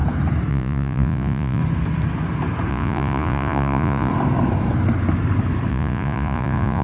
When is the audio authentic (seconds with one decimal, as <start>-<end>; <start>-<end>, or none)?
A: 0.0-0.5; 1.6-2.7; 4.1-5.7